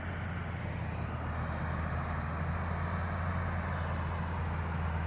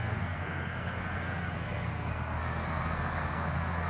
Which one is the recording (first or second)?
first